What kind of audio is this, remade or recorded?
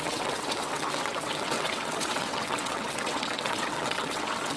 remade